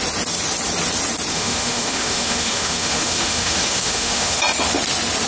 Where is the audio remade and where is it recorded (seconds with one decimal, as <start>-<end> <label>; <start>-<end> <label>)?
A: 0.0-1.3 recorded; 1.3-4.4 remade; 4.4-5.3 recorded